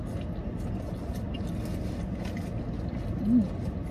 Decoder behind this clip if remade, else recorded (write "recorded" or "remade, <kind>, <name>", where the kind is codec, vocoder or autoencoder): recorded